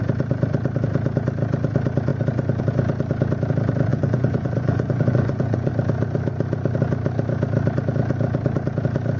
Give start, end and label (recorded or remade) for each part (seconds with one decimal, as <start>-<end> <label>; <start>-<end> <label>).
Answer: 0.0-3.9 recorded; 3.9-5.7 remade; 5.7-9.2 recorded